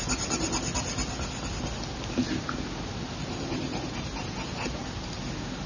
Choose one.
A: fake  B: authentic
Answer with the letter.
B